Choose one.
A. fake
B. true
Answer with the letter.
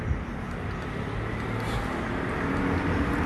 B